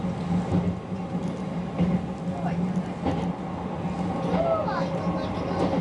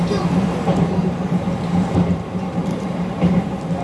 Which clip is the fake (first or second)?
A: second